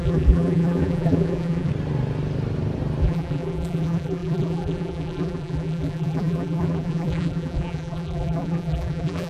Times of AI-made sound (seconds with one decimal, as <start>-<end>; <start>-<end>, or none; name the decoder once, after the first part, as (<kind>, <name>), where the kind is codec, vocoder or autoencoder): 0.0-1.7 (vocoder, BigVGAN v2); 3.0-9.3